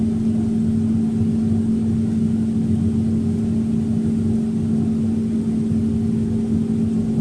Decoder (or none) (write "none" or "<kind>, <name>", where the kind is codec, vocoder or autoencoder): none